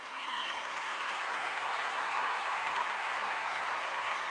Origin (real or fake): fake